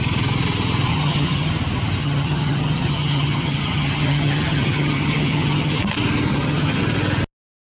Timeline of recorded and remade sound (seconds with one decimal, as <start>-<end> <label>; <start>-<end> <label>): 0.0-0.9 recorded; 0.9-1.5 remade; 1.5-2.0 recorded; 2.0-5.8 remade; 5.8-6.3 recorded; 6.3-6.8 remade; 6.8-7.7 recorded